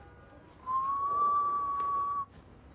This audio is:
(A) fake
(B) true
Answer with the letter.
B